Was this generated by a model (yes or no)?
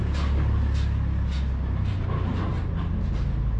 no